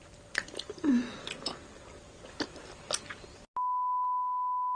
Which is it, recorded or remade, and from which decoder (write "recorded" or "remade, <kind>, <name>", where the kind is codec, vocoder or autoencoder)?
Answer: recorded